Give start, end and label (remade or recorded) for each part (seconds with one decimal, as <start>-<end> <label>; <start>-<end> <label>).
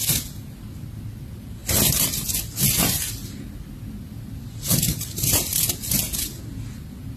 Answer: 0.0-7.2 recorded